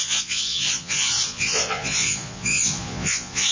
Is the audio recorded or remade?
remade